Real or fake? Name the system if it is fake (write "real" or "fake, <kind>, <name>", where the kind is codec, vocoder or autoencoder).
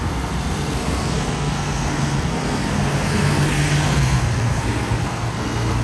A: fake, codec, SNAC